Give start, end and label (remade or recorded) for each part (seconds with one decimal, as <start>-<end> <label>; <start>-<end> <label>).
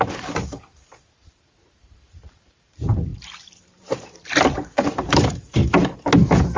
0.0-5.6 remade; 5.6-6.6 recorded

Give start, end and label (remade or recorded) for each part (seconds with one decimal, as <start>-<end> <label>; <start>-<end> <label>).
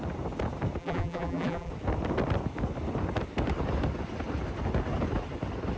0.0-0.8 recorded; 0.8-1.7 remade; 1.7-5.8 recorded